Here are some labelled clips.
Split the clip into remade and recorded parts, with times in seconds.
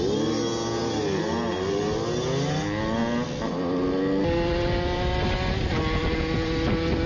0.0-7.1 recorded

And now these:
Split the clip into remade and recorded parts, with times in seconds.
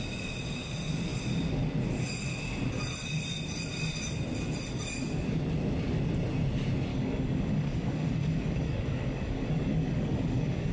0.0-6.9 recorded; 6.9-10.7 remade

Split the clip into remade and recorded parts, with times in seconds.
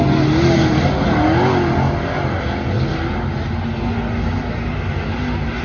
0.0-5.6 recorded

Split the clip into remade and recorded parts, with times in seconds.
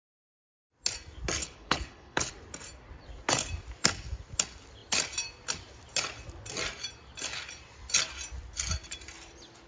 0.0-1.4 recorded; 1.4-2.3 remade; 2.3-9.7 recorded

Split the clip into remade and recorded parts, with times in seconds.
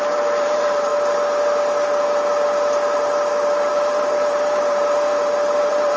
0.0-0.9 remade; 0.9-3.7 recorded; 3.7-5.1 remade; 5.1-5.6 recorded; 5.6-6.0 remade